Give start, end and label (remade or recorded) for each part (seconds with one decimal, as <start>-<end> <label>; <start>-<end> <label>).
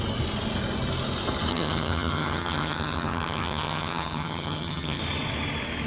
0.0-1.5 recorded; 1.5-5.0 remade; 5.0-5.9 recorded